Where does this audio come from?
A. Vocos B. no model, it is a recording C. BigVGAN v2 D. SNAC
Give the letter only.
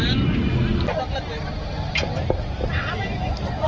B